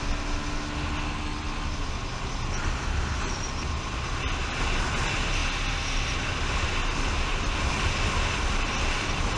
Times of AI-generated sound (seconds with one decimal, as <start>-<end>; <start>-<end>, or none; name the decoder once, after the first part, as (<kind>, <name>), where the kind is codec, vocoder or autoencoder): none